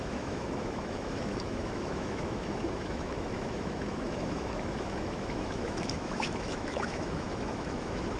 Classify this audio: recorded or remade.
remade